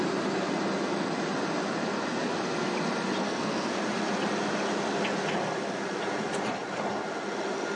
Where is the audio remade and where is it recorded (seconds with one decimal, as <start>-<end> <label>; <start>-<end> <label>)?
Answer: 0.0-3.2 recorded; 3.2-3.8 remade; 3.8-7.8 recorded